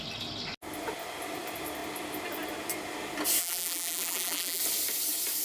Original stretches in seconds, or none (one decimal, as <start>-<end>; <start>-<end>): 0.0-3.4; 4.6-5.4